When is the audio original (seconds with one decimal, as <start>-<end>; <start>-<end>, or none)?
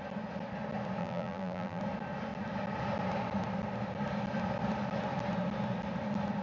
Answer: 0.0-1.0; 1.8-6.4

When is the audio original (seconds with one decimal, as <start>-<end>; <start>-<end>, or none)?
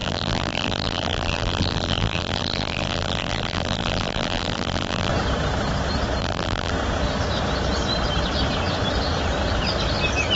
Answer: 5.1-6.2; 6.7-10.4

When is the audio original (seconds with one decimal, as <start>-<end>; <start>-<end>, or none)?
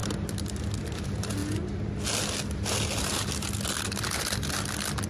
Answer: 0.0-0.9; 1.4-4.5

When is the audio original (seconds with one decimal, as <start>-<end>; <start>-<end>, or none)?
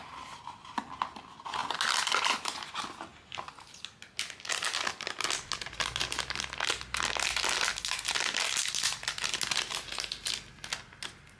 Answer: 0.0-11.4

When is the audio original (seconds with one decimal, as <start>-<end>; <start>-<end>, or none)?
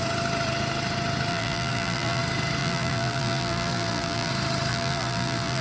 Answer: 0.0-1.3; 2.2-2.6; 4.3-4.7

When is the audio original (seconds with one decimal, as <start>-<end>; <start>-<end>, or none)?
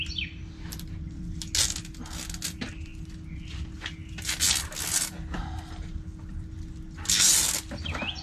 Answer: 0.0-8.2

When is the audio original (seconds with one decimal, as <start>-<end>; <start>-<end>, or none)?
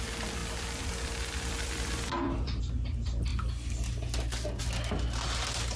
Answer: 0.0-0.4; 2.6-5.8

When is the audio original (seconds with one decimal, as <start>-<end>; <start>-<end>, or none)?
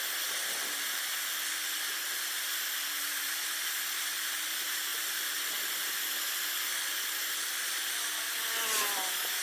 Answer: 0.0-9.4